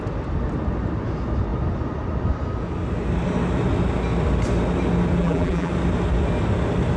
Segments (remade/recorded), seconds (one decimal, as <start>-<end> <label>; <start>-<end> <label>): 0.0-5.2 recorded; 5.2-5.7 remade; 5.7-7.0 recorded